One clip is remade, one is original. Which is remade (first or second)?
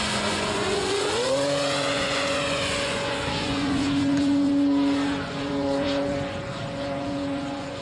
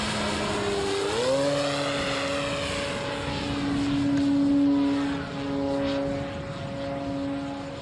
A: first